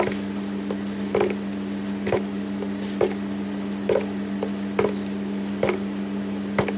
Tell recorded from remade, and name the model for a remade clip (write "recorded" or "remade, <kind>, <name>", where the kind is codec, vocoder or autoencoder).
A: recorded